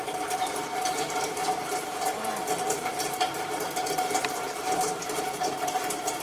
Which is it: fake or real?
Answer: fake